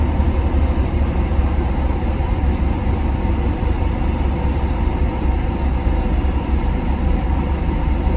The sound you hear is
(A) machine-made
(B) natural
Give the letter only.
A